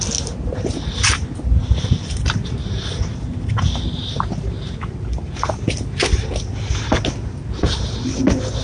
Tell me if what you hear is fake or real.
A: real